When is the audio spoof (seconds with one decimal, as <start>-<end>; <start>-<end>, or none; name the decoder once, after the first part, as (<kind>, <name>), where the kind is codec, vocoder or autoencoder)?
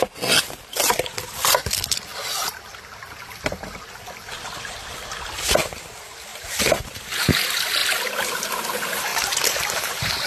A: 6.3-7.3 (vocoder, BigVGAN v2); 9.1-10.3